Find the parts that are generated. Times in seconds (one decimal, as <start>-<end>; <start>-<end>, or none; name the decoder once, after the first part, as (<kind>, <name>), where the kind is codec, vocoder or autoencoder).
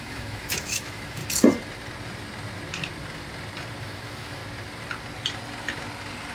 0.0-1.2 (autoencoder, DAC-VAE); 3.8-4.4